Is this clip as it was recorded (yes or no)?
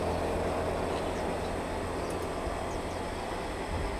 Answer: yes